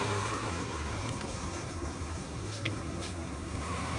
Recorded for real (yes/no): no